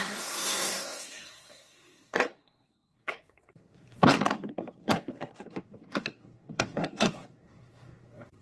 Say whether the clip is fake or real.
fake